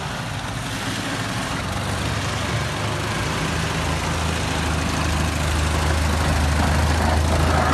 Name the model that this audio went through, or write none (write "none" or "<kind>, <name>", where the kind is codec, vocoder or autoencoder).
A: none